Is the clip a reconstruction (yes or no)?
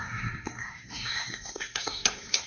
yes